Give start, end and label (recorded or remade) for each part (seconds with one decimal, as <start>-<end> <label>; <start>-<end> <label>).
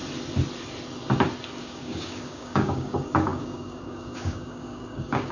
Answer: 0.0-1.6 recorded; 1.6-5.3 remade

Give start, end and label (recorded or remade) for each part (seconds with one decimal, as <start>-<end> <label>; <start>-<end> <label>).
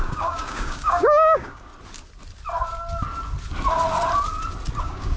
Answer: 0.0-1.7 remade; 1.7-4.8 recorded; 4.8-5.2 remade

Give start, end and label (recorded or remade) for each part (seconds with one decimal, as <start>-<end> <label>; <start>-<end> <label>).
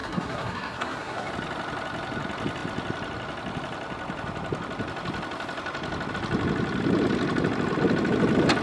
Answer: 0.0-1.3 remade; 1.3-8.6 recorded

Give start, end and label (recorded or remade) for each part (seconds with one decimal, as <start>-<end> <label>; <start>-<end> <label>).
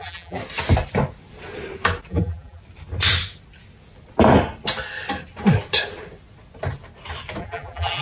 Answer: 0.0-0.4 remade; 0.4-2.1 recorded; 2.1-2.6 remade; 2.6-7.4 recorded; 7.4-8.0 remade